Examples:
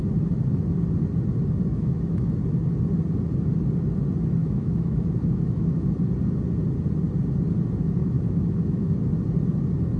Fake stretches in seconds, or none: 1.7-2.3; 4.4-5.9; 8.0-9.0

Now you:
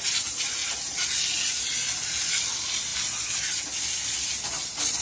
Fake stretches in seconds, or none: none